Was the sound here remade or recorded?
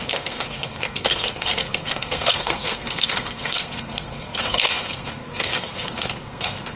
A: remade